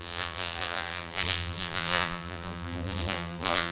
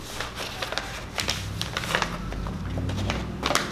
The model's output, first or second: first